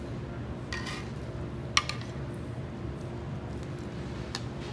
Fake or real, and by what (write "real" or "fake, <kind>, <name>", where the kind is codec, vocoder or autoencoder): real